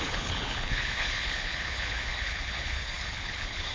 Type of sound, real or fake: fake